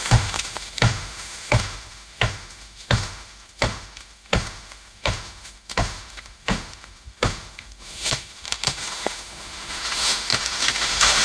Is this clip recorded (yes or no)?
no